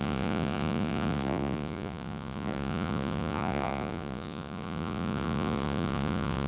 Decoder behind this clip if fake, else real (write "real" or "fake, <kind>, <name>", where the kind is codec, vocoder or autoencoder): fake, vocoder, Vocos